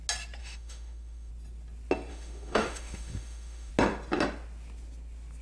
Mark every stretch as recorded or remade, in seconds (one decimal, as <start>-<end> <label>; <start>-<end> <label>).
0.0-0.4 recorded; 0.4-1.3 remade; 1.3-2.1 recorded; 2.1-3.7 remade; 3.7-5.4 recorded

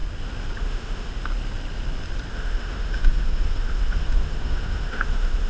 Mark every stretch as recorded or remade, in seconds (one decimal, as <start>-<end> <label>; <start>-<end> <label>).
0.0-0.6 recorded; 0.6-1.1 remade; 1.1-2.3 recorded; 2.3-5.5 remade

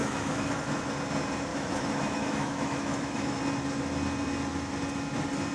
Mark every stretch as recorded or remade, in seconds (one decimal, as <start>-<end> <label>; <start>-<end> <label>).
0.0-0.9 remade; 0.9-1.5 recorded; 1.5-3.4 remade; 3.4-5.5 recorded